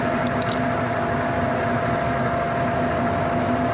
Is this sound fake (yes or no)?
no